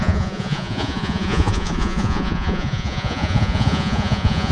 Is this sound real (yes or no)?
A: no